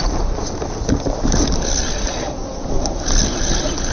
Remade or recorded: recorded